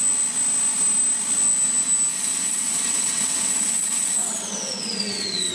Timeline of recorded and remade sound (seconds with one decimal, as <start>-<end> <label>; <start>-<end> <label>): 0.0-2.1 recorded; 2.1-5.5 remade